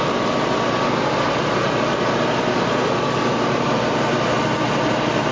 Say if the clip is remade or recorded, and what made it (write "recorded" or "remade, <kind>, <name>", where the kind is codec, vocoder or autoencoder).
recorded